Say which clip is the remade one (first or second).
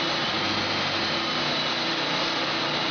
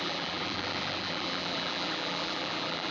second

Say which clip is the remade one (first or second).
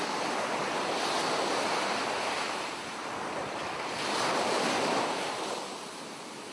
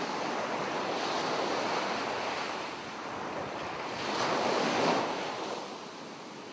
first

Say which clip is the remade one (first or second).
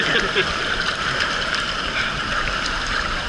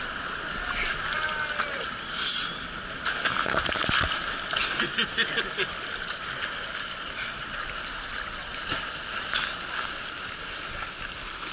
first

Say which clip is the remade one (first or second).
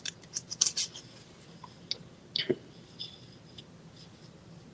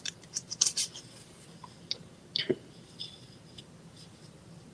second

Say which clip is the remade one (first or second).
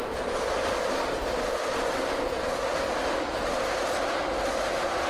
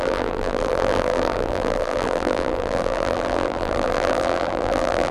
second